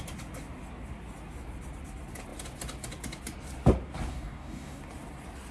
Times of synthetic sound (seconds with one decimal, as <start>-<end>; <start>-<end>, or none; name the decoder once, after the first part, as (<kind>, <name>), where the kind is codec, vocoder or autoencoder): 4.1-4.8 (codec, DAC)